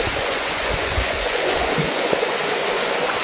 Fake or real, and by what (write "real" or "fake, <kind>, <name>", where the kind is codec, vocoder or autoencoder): fake, vocoder, Vocos